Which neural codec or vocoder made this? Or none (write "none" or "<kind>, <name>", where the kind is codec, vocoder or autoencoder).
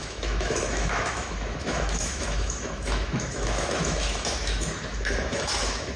autoencoder, DAC-VAE